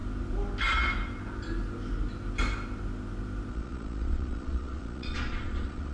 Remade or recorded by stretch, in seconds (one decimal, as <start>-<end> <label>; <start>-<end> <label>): 0.0-3.5 recorded; 3.5-5.9 remade